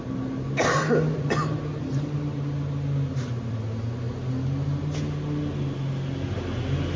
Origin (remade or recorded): recorded